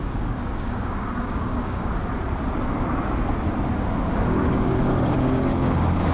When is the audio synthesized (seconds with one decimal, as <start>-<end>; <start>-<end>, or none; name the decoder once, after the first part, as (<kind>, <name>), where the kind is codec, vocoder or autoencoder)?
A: 0.0-2.0 (codec, DAC); 4.1-6.1